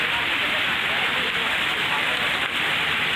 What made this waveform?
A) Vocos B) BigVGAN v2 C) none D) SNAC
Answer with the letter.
C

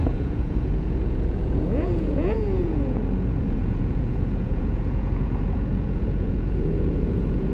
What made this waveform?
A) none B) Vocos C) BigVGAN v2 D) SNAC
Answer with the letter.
B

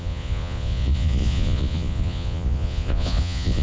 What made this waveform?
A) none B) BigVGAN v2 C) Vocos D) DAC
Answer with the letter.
C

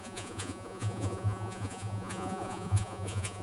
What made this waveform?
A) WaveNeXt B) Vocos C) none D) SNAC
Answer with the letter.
B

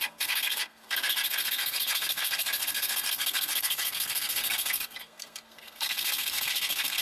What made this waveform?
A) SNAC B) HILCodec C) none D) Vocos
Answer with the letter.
A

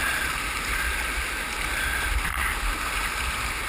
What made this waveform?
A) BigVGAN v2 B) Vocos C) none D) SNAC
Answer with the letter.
C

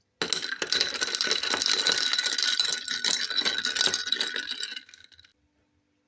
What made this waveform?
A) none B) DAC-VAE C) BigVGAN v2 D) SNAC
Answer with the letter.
A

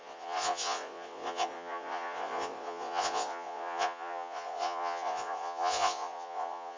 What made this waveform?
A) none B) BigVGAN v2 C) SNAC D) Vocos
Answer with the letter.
D